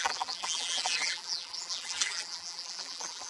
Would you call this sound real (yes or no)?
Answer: no